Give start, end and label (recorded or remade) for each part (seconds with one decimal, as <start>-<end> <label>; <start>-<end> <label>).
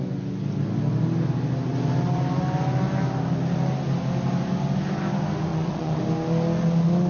0.0-5.5 recorded; 5.5-6.0 remade; 6.0-7.1 recorded